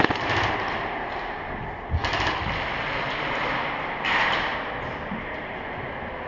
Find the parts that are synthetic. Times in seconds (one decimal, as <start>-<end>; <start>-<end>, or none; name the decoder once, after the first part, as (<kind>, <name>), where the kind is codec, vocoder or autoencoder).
none